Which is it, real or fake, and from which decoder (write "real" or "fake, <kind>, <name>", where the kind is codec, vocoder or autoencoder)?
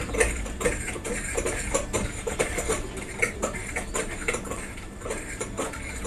fake, vocoder, BigVGAN v2